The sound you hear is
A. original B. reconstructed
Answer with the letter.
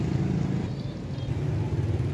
A